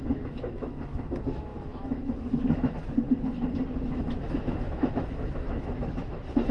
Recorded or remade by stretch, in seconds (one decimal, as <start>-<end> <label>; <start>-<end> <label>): 0.0-2.8 remade; 2.8-3.7 recorded; 3.7-6.5 remade